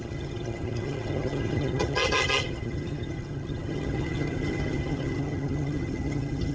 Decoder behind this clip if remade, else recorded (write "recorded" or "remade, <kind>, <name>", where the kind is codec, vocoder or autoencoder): remade, vocoder, HiFi-GAN